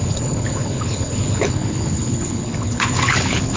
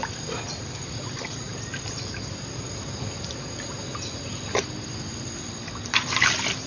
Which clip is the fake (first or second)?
first